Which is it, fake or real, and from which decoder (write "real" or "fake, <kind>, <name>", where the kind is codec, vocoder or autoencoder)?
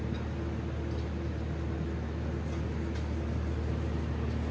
real